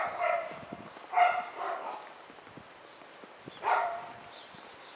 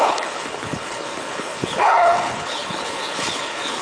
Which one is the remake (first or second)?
second